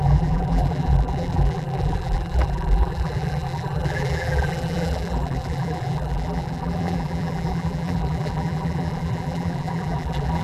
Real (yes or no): no